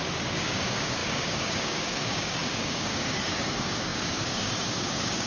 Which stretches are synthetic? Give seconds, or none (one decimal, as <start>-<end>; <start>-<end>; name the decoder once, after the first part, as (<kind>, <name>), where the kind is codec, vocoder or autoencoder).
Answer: 0.0-5.3 (codec, DAC)